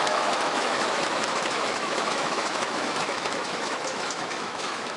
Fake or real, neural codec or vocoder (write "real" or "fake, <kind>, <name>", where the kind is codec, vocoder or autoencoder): fake, autoencoder, DAC-VAE